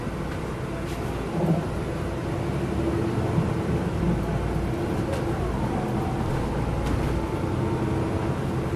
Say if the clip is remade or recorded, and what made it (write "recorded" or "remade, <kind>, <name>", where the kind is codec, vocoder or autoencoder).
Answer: recorded